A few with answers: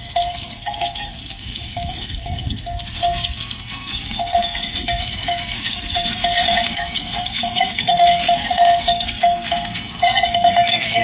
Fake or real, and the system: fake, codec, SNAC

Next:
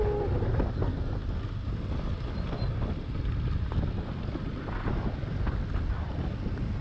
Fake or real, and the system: real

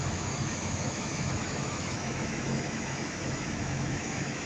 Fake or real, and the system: fake, autoencoder, DAC-VAE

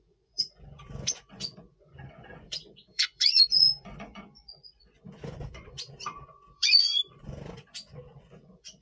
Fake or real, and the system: fake, vocoder, Vocos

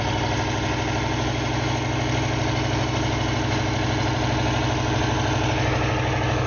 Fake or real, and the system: real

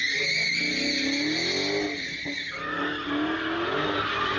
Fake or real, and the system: real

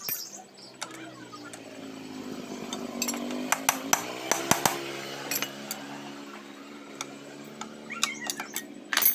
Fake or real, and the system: real